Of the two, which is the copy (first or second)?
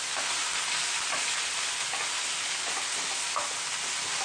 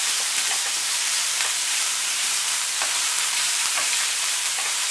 second